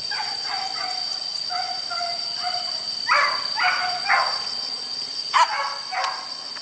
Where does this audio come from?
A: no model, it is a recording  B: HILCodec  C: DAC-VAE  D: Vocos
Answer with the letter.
A